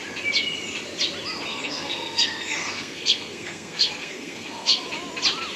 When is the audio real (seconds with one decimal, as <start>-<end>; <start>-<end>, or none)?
0.0-1.5; 4.9-5.6